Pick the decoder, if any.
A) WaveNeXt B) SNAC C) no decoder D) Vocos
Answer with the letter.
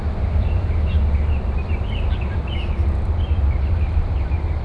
C